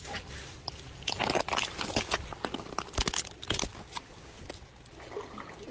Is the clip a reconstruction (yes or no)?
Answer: no